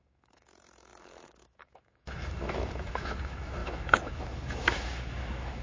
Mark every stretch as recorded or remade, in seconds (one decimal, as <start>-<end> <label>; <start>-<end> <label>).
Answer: 0.0-5.6 remade